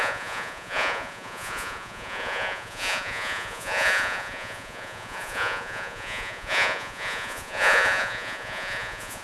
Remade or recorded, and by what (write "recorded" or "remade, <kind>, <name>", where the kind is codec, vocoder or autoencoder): remade, vocoder, Vocos